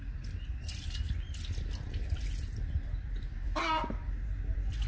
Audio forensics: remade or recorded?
remade